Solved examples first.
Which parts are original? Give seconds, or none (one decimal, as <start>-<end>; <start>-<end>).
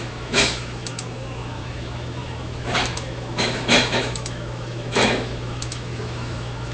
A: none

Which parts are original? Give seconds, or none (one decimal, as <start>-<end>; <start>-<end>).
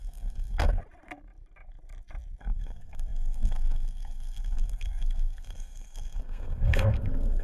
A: 0.8-2.4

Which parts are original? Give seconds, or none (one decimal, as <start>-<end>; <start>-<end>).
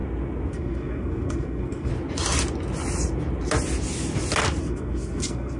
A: 0.0-0.5; 1.9-4.6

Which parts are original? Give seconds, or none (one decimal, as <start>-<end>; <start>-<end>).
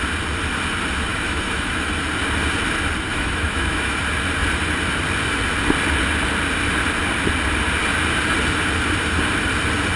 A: 0.0-1.1; 1.9-3.1; 3.9-10.0